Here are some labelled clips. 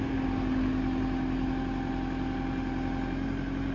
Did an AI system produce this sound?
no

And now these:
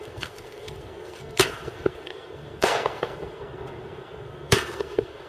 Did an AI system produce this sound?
yes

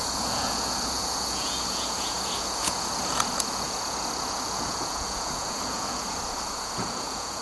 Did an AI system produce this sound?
yes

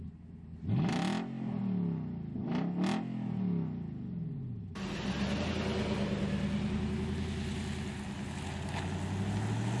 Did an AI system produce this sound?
no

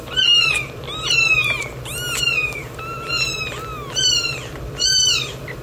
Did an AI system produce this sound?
yes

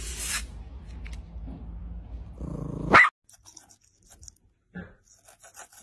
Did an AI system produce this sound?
no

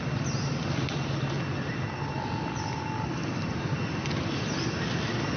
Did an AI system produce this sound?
no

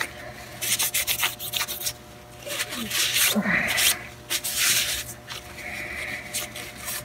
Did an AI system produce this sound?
no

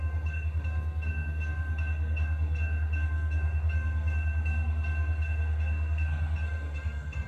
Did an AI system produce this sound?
yes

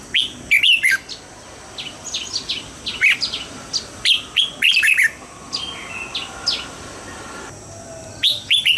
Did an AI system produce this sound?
no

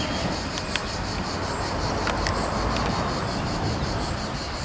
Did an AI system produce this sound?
no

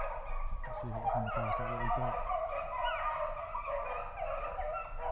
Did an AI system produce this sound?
no